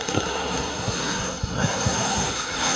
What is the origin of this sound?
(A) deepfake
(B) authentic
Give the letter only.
A